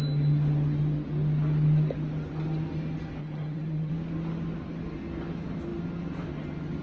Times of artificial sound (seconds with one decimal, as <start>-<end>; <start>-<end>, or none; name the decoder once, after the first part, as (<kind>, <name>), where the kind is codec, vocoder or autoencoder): 3.2-3.9 (vocoder, HiFi-GAN)